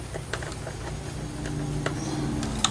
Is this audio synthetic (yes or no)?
no